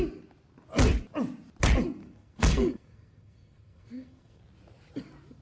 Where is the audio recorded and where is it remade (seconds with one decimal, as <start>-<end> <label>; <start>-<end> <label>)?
0.0-2.0 recorded; 2.0-4.4 remade; 4.4-5.4 recorded